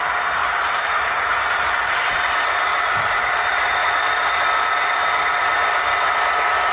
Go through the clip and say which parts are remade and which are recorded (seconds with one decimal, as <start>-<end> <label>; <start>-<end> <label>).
0.0-0.4 recorded; 0.4-1.3 remade; 1.3-2.7 recorded; 2.7-3.3 remade; 3.3-3.8 recorded; 3.8-4.3 remade; 4.3-5.9 recorded; 5.9-6.7 remade